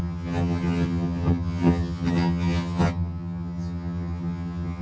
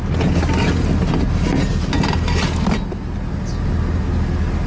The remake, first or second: first